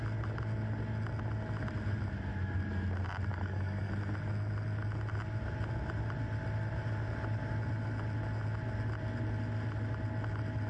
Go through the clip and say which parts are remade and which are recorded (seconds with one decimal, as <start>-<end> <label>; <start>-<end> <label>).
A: 0.0-3.3 recorded; 3.3-3.9 remade; 3.9-10.7 recorded